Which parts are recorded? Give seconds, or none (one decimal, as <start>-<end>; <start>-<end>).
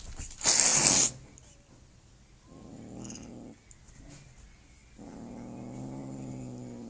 0.0-6.9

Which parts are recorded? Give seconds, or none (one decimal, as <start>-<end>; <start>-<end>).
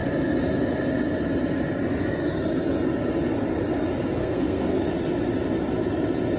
0.0-4.2; 4.8-6.4